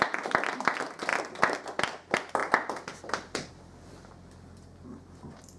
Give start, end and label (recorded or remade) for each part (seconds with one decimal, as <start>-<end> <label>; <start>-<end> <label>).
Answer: 0.0-5.6 recorded